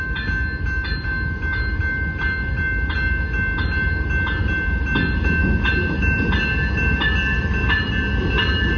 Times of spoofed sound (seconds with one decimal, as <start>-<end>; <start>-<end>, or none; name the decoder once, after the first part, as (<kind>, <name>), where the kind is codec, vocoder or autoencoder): none

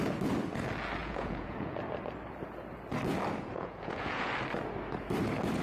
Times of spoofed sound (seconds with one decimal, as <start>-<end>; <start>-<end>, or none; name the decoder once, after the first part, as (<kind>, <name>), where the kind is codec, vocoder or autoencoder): 1.0-1.8 (vocoder, Vocos); 3.5-4.3

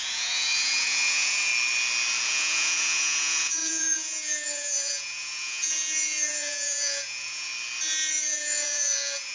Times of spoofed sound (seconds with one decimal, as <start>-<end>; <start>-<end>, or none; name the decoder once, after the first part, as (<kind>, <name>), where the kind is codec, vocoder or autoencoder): 0.0-1.5 (vocoder, Vocos); 2.3-7.5; 8.1-9.3

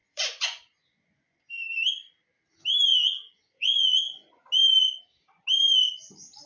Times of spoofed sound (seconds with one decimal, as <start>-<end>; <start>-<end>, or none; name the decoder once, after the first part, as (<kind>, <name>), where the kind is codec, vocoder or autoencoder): 0.0-1.5 (vocoder, Vocos); 2.9-4.4

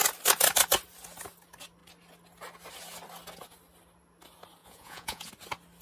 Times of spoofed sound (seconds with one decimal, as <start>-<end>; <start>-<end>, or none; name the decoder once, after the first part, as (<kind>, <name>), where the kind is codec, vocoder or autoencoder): 4.6-5.3 (vocoder, Vocos)

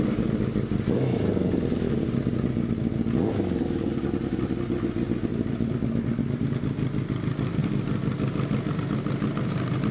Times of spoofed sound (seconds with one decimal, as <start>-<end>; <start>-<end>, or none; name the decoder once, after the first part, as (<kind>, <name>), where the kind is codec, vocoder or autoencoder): none

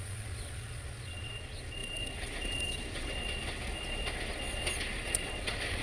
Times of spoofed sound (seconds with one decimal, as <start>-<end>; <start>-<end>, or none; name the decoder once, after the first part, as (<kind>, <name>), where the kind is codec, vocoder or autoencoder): 0.0-5.8 (vocoder, Vocos)

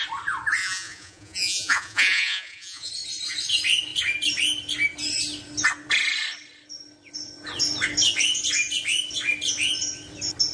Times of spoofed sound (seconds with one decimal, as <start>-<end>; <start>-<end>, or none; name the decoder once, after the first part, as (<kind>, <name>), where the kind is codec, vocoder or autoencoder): 0.6-2.9 (vocoder, Vocos)